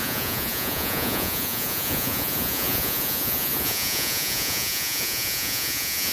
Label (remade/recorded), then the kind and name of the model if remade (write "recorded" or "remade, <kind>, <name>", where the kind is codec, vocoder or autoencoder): remade, vocoder, Vocos